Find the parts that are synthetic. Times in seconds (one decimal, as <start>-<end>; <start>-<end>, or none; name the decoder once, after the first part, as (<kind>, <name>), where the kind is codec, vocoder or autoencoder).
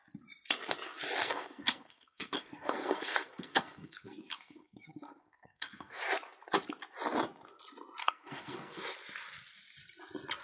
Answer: 1.2-6.0 (codec, SNAC); 8.0-8.8